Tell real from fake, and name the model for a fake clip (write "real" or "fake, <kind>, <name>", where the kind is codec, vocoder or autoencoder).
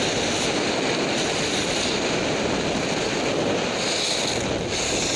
real